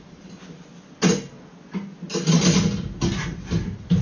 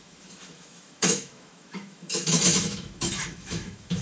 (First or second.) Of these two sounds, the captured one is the first